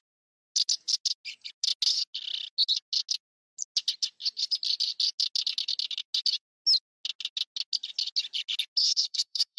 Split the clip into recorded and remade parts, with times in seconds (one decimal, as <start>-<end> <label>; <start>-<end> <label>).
0.0-8.8 recorded; 8.8-9.6 remade